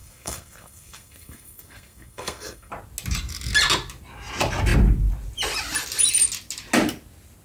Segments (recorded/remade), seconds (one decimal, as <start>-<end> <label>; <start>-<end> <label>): 0.0-2.7 remade; 2.7-7.4 recorded